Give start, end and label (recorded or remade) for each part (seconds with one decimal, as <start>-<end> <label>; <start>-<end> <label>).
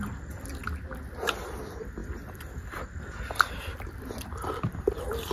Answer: 0.0-5.3 recorded